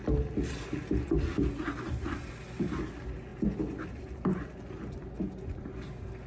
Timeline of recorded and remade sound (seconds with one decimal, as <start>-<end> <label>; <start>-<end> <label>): 0.0-6.3 recorded